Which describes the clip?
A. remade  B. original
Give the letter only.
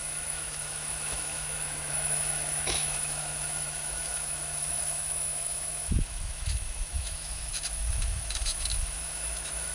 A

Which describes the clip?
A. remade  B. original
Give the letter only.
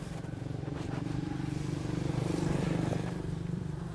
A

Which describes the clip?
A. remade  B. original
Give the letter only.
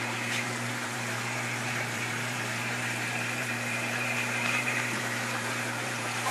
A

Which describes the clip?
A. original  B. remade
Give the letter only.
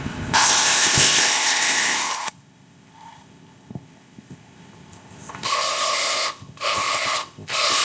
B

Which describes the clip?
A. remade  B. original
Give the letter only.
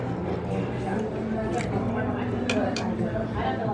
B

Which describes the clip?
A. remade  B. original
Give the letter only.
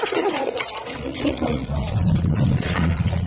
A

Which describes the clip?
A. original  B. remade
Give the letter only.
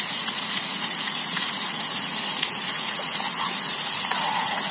B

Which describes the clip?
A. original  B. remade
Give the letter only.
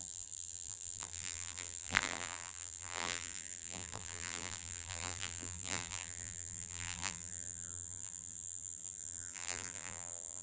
B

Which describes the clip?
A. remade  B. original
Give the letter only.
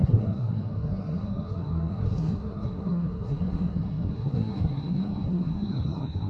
A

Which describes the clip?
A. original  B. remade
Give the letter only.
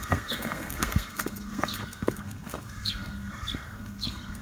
B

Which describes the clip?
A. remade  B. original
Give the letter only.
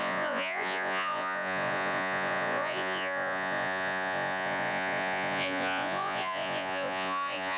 A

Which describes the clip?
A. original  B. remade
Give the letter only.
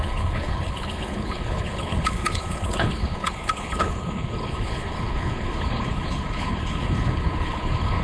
B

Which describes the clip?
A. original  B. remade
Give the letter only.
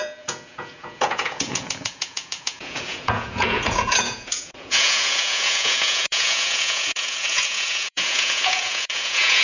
B